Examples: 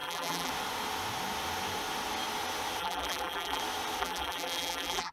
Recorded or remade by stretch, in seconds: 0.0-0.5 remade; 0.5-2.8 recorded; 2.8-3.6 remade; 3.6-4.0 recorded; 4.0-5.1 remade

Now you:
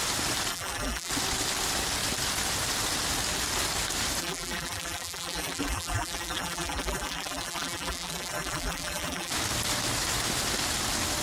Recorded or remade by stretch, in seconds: 0.0-0.5 recorded; 0.5-1.1 remade; 1.1-4.2 recorded; 4.2-9.3 remade; 9.3-11.2 recorded

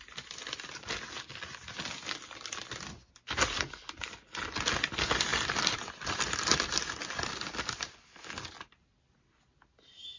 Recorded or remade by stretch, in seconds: 0.0-5.3 recorded; 5.3-7.4 remade; 7.4-10.2 recorded

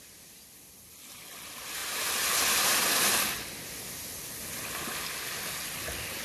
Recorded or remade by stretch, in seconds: 0.0-6.2 recorded

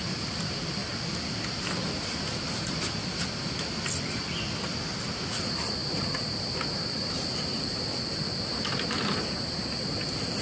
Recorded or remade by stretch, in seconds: 0.0-0.8 remade; 0.8-5.3 recorded; 5.3-10.4 remade

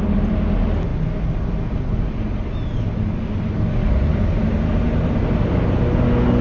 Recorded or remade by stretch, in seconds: 0.0-6.4 recorded

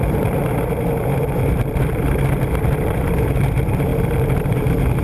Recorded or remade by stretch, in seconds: 0.0-5.0 remade